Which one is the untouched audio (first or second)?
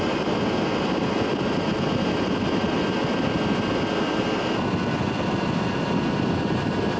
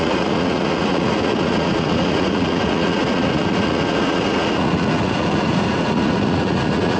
first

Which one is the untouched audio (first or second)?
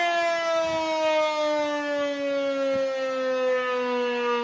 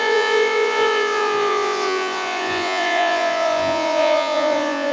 first